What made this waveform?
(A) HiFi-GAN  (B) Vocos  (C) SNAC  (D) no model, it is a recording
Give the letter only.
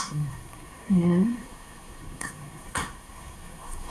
C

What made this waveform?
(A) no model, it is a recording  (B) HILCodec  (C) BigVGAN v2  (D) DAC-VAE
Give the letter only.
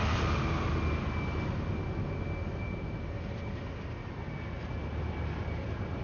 A